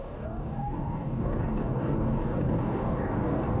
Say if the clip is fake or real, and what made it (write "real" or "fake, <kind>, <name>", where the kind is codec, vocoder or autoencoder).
fake, codec, DAC